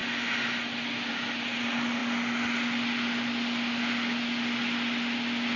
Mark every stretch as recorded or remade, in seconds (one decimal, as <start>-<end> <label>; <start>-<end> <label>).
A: 0.0-5.6 recorded